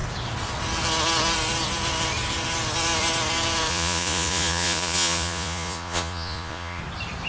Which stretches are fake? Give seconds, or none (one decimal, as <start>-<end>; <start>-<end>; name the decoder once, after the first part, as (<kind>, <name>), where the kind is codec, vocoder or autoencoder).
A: 3.7-6.8 (vocoder, Vocos)